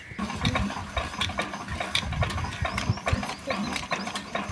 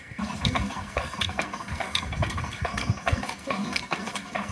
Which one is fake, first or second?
second